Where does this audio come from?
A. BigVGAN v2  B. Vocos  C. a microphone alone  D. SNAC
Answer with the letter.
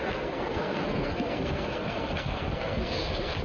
D